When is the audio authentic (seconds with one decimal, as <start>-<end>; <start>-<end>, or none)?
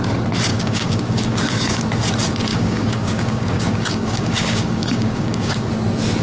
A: 0.0-0.5; 1.8-2.5; 5.7-6.2